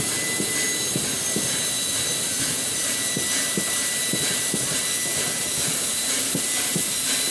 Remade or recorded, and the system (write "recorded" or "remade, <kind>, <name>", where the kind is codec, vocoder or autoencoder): recorded